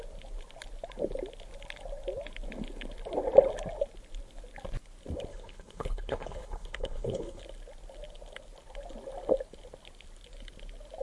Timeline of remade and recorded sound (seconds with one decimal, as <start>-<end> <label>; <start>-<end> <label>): 0.0-5.3 recorded; 5.3-7.4 remade; 7.4-11.0 recorded